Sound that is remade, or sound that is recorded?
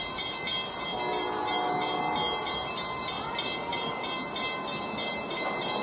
recorded